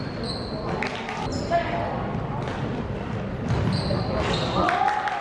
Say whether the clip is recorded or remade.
recorded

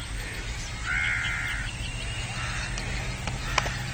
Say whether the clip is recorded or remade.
recorded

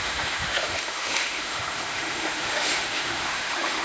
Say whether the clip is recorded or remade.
remade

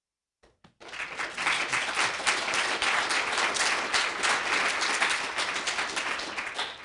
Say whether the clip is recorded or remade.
recorded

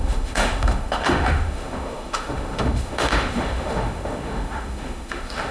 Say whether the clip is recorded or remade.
remade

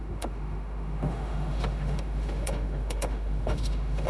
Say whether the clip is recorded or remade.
remade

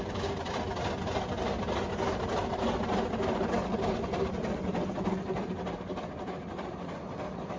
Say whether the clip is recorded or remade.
recorded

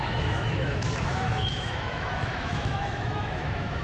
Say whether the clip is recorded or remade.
remade